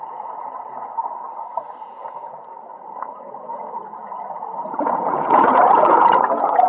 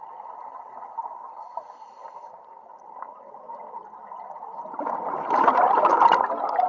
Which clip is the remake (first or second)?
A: first